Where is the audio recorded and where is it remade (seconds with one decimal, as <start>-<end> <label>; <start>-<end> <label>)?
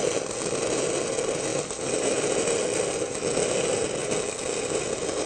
0.0-5.3 recorded